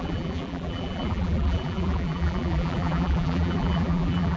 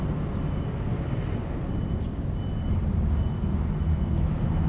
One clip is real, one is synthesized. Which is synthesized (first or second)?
first